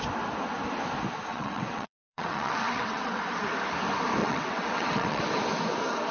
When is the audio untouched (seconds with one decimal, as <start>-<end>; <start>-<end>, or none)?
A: 0.0-1.3; 3.2-4.2; 5.2-6.1